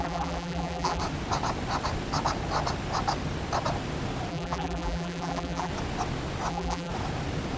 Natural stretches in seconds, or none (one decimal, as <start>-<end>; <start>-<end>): 1.0-4.3; 5.7-6.5; 6.9-7.6